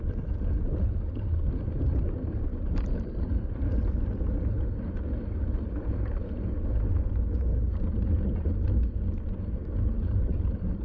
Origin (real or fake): real